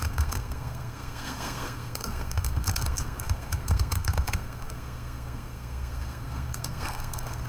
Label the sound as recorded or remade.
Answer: remade